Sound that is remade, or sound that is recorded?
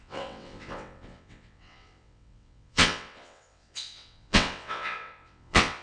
remade